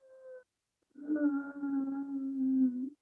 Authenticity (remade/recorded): recorded